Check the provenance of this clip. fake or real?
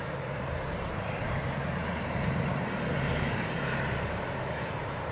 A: fake